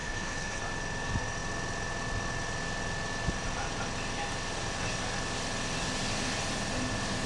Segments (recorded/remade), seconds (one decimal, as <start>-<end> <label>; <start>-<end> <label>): 0.0-0.6 remade; 0.6-7.3 recorded